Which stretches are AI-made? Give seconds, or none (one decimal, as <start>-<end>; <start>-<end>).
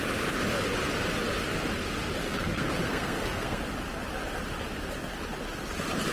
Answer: 2.2-3.6